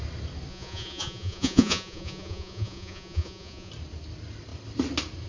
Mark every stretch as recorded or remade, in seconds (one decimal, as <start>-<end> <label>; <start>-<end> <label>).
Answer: 0.0-0.5 recorded; 0.5-3.7 remade; 3.7-5.3 recorded